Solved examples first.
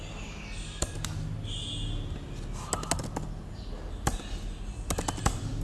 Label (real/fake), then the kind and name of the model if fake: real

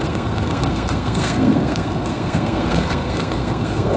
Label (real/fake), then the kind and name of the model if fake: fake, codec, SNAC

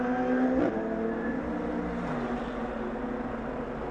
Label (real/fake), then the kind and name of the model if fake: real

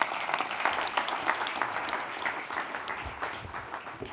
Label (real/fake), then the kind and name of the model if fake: real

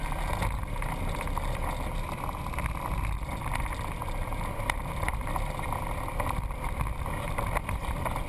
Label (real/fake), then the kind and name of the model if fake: real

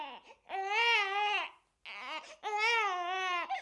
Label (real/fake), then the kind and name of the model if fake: real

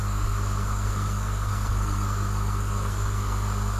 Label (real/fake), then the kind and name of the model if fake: fake, codec, SNAC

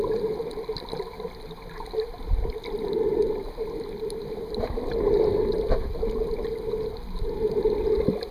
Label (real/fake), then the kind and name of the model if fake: real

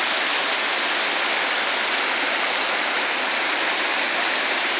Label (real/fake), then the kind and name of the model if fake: real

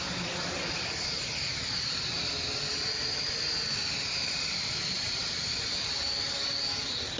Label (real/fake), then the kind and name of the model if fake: real